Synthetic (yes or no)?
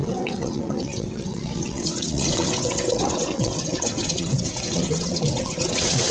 yes